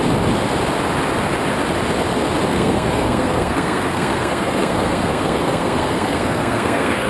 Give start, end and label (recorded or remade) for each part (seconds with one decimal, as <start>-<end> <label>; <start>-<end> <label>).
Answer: 0.0-2.5 recorded; 2.5-7.1 remade